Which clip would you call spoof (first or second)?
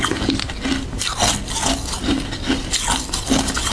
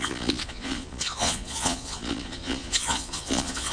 second